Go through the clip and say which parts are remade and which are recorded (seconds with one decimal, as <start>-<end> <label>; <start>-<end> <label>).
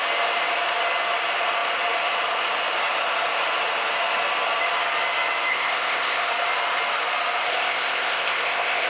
0.0-5.5 recorded; 5.5-6.3 remade; 6.3-7.5 recorded; 7.5-8.9 remade